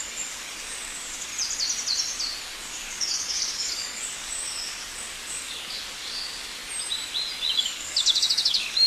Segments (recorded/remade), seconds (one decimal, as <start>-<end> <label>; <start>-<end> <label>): 0.0-1.3 remade; 1.3-2.6 recorded; 2.6-6.6 remade; 6.6-7.6 recorded; 7.6-8.9 remade